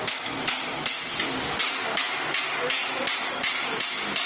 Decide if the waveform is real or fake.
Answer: real